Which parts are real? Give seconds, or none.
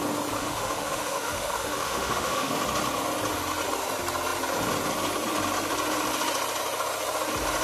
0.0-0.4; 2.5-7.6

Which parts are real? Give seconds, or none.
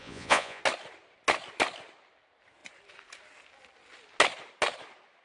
0.6-5.2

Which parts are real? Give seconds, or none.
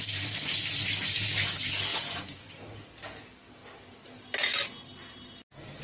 0.0-1.9; 2.5-5.8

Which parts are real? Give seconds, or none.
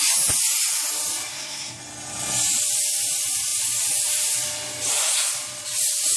0.0-1.3; 1.8-6.2